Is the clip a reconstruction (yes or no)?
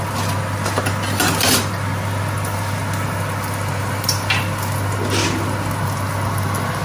no